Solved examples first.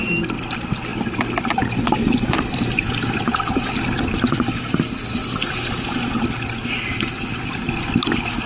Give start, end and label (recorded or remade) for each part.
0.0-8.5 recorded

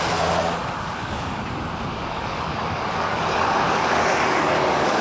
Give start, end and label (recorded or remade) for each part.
0.0-0.6 recorded; 0.6-1.4 remade; 1.4-1.9 recorded; 1.9-5.0 remade

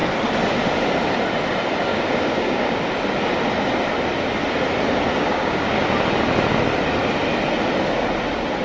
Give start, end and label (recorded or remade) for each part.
0.0-1.9 recorded; 1.9-2.8 remade; 2.8-5.1 recorded; 5.1-5.8 remade; 5.8-8.6 recorded

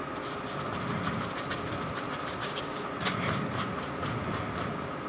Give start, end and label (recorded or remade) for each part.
0.0-2.4 recorded; 2.4-2.9 remade; 2.9-5.1 recorded